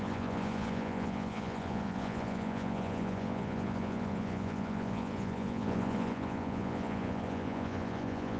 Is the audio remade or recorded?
remade